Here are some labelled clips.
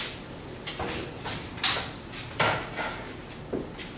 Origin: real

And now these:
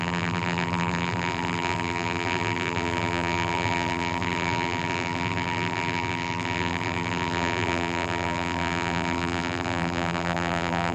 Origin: fake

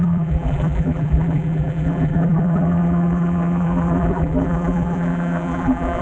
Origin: fake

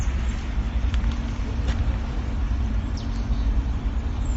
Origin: fake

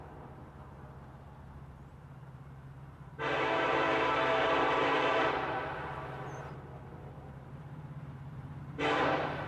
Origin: fake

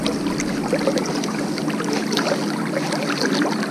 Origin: real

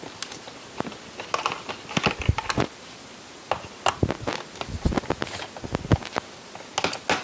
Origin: real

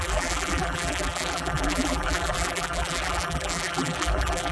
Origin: fake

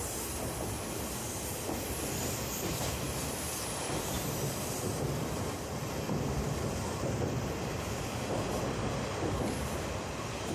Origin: fake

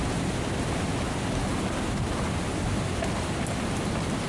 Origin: real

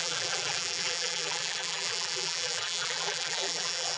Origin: fake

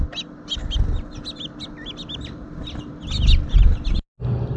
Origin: real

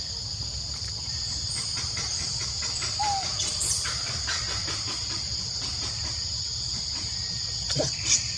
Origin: real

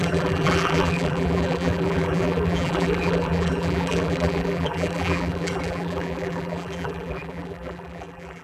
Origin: fake